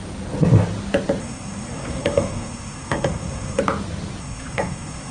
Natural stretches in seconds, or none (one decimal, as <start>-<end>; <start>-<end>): 0.0-1.2; 3.6-4.2